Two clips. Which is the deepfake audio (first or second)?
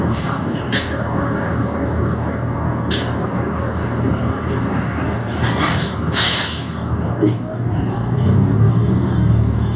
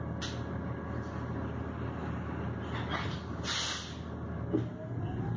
first